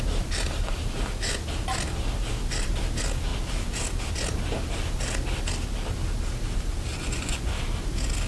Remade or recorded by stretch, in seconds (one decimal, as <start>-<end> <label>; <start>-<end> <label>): 0.0-6.9 recorded; 6.9-7.5 remade; 7.5-8.3 recorded